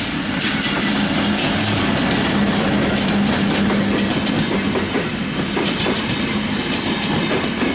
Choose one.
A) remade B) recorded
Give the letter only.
B